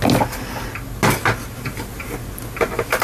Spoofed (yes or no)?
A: no